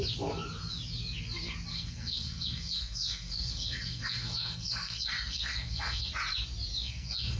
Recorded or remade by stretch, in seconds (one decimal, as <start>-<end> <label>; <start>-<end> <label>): 0.0-1.7 recorded; 1.7-6.1 remade; 6.1-6.8 recorded; 6.8-7.4 remade